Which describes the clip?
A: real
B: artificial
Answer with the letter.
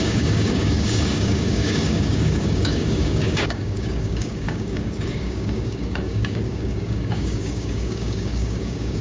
B